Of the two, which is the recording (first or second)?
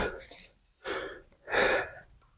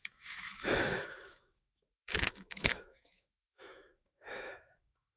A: first